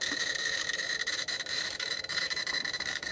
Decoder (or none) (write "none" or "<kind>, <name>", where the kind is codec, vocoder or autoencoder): autoencoder, DAC-VAE